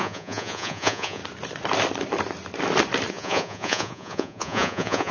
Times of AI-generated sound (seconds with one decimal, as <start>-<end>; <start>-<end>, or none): 0.0-1.2; 3.1-5.1